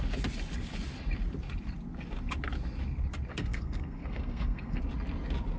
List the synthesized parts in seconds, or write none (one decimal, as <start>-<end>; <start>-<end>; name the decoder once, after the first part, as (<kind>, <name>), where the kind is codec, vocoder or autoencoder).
3.3-4.8 (codec, SNAC)